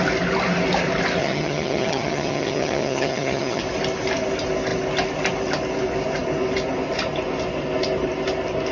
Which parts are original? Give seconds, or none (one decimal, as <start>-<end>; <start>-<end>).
0.0-1.2; 3.6-8.7